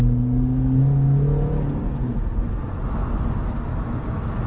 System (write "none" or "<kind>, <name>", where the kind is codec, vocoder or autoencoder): none